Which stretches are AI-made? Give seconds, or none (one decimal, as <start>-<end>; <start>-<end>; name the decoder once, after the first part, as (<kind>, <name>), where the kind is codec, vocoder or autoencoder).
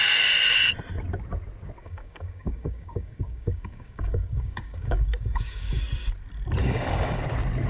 1.8-5.8 (codec, DAC); 6.6-7.2